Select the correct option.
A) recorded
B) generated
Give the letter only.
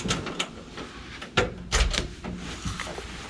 A